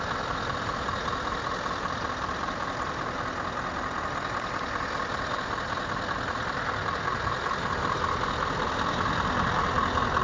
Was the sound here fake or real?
real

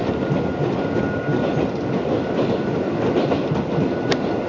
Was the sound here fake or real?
real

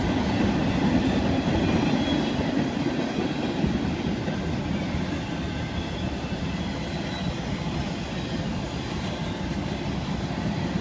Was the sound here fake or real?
real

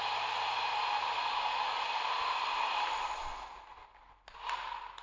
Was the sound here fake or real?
real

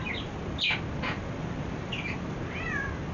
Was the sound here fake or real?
real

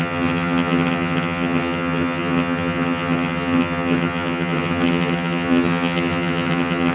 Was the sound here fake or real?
fake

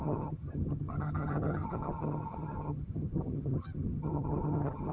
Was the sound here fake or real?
fake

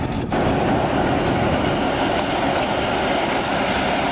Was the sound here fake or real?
real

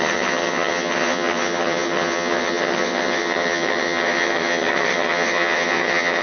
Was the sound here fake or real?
fake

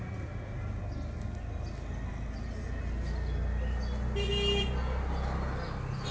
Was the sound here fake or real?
real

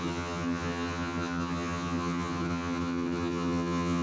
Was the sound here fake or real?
fake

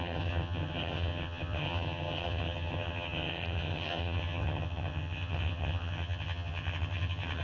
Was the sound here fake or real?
fake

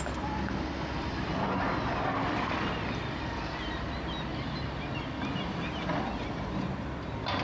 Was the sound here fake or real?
real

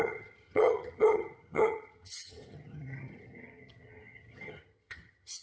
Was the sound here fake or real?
fake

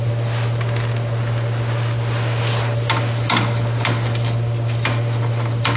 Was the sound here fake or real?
real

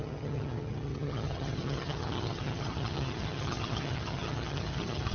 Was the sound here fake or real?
fake